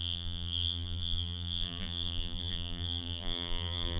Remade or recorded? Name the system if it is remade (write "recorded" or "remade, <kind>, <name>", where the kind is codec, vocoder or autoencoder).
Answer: remade, vocoder, BigVGAN v2